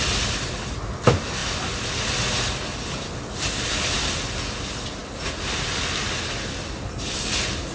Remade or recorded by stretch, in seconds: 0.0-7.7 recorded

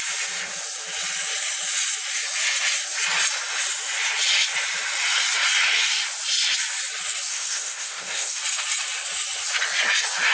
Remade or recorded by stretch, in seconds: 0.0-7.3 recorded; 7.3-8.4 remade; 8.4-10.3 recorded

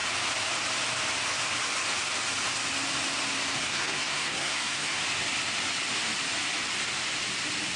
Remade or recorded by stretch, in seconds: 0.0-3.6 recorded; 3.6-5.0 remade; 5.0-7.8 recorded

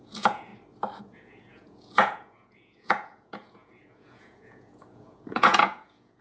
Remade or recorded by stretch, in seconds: 0.0-0.5 remade; 0.5-1.0 recorded; 1.0-6.2 remade

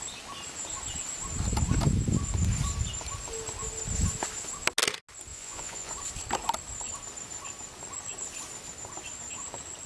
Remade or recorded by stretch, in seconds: 0.0-5.3 recorded; 5.3-5.9 remade; 5.9-9.9 recorded